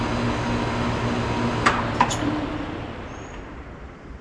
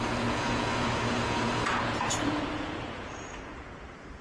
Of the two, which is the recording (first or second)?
first